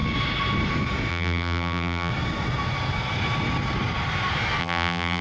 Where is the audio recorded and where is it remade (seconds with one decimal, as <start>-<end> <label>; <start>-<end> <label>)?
0.0-1.1 recorded; 1.1-2.1 remade; 2.1-4.6 recorded; 4.6-5.2 remade